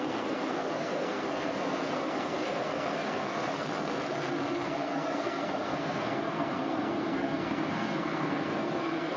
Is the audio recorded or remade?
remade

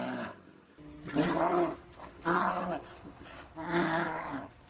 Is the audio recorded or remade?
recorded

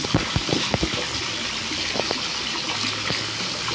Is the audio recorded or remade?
recorded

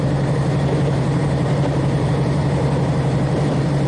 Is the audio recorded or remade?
remade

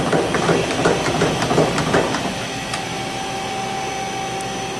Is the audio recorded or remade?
recorded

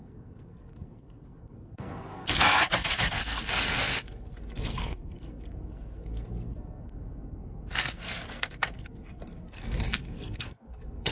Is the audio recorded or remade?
remade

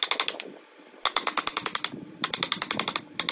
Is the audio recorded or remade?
recorded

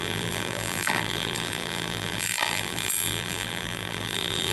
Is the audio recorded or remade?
remade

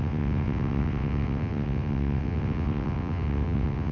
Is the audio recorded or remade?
remade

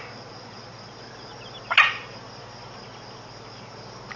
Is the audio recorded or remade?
recorded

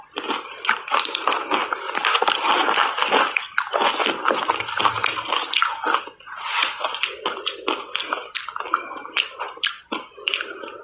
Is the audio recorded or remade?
recorded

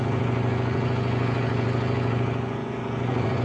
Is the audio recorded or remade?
remade